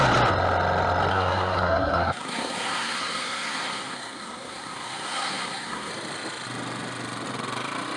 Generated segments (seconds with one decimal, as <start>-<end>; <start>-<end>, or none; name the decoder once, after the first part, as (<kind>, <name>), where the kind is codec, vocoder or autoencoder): 1.1-5.9 (codec, SNAC)